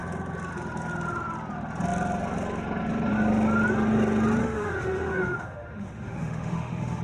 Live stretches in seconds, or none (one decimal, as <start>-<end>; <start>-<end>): 0.0-4.4